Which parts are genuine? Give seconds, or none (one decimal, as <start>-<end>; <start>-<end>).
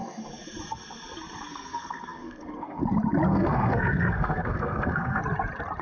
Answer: 0.0-1.5; 2.8-3.3; 5.2-5.8